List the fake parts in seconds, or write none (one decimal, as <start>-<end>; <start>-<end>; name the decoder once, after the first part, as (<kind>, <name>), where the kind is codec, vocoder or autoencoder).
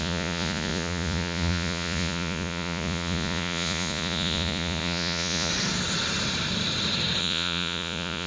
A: 0.0-5.5 (vocoder, Vocos); 7.2-8.3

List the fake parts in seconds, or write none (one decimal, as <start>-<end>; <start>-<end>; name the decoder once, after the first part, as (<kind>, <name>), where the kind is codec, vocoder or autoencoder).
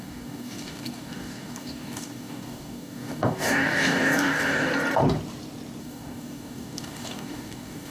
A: 0.0-4.7 (codec, DAC); 5.8-7.9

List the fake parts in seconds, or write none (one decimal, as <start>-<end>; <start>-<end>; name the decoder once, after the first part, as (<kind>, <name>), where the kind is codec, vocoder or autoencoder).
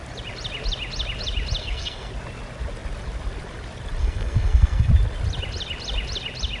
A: 1.6-2.1 (codec, SNAC); 4.0-4.9